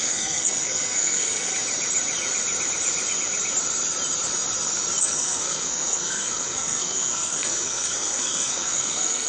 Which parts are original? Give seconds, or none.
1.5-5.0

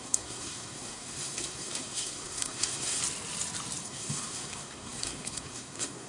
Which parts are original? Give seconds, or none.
3.0-3.8